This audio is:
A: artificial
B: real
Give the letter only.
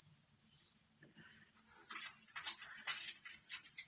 B